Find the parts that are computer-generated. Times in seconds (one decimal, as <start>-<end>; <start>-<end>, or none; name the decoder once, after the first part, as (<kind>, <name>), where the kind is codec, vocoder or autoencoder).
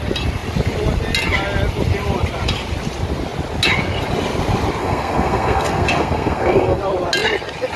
4.8-6.8 (codec, SNAC)